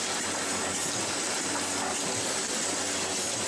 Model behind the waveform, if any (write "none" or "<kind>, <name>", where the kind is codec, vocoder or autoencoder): none